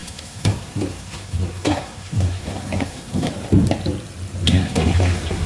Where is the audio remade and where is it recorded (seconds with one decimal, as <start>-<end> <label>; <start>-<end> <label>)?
0.0-3.3 remade; 3.3-4.4 recorded; 4.4-5.5 remade